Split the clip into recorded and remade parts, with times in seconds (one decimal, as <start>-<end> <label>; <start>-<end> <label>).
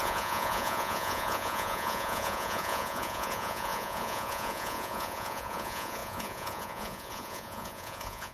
0.0-8.3 remade